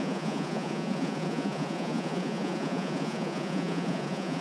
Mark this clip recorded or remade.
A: remade